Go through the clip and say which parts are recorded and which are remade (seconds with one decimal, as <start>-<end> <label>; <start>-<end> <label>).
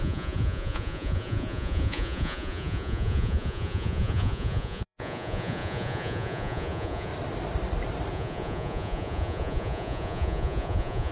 0.0-7.1 remade; 7.1-8.1 recorded; 8.1-11.1 remade